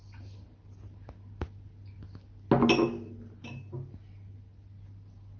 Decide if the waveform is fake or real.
real